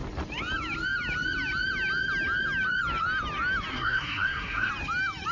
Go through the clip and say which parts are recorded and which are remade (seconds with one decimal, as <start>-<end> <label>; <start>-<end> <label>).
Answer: 0.0-3.7 recorded; 3.7-4.7 remade; 4.7-5.3 recorded